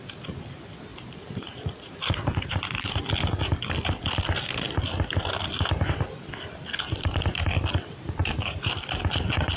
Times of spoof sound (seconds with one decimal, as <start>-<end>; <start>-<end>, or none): 0.9-3.0; 8.2-8.8

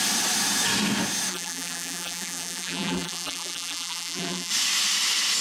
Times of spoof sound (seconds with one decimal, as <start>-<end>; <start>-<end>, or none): 1.3-4.5

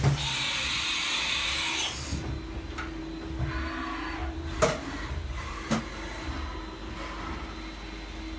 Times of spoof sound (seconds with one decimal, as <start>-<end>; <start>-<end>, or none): 4.2-5.8

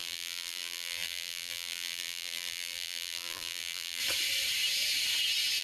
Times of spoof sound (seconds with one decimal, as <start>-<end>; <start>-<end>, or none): 0.0-4.0